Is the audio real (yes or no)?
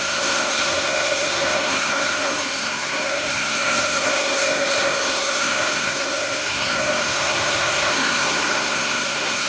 no